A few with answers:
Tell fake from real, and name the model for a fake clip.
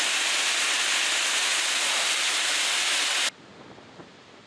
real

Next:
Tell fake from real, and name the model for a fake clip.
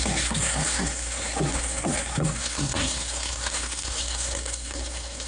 fake, codec, SNAC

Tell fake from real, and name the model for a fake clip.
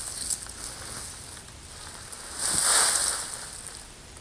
real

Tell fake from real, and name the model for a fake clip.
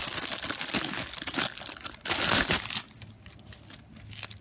real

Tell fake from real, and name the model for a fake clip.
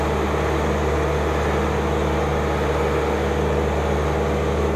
real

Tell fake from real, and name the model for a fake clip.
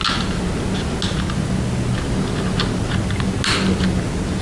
real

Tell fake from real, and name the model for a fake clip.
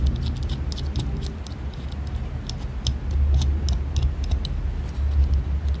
real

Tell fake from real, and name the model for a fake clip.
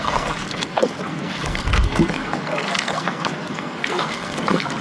fake, codec, SNAC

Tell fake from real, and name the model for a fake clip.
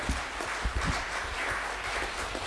real